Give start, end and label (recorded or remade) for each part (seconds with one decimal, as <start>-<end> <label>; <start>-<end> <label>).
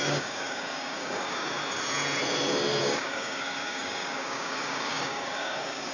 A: 0.0-1.6 remade; 1.6-2.8 recorded; 2.8-5.9 remade